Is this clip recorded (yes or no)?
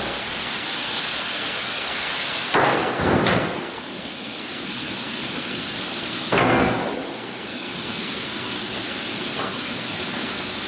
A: no